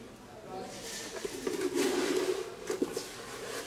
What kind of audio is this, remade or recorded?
recorded